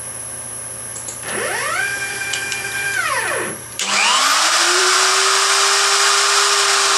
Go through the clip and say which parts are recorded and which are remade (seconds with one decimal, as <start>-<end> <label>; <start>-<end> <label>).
0.0-0.9 recorded; 0.9-5.1 remade; 5.1-7.0 recorded